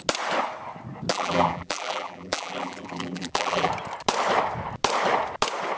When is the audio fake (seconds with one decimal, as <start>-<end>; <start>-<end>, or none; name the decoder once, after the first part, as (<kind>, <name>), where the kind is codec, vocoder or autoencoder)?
1.1-3.7 (vocoder, BigVGAN v2)